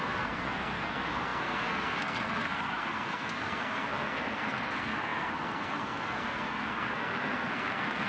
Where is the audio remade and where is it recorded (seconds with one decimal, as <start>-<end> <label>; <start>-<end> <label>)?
0.0-8.1 remade